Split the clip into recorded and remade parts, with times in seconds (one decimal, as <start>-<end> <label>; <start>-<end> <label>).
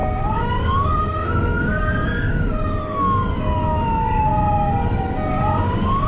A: 0.0-4.3 remade; 4.3-5.3 recorded; 5.3-6.1 remade